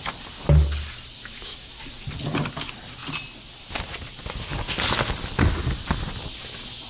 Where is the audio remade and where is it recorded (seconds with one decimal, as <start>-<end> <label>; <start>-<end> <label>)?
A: 0.0-1.2 recorded; 1.2-1.8 remade; 1.8-6.9 recorded